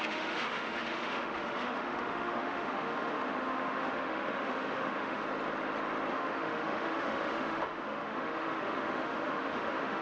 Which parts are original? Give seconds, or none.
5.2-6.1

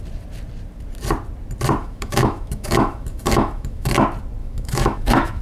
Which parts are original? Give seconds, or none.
0.0-1.8; 3.9-4.4

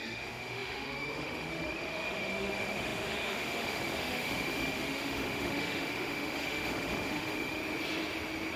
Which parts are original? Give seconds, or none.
7.6-8.6

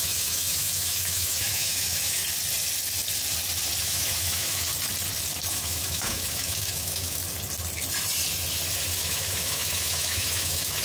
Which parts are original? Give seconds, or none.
2.2-3.8; 4.7-5.5; 7.2-9.0